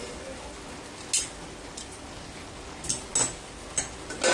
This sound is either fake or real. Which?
real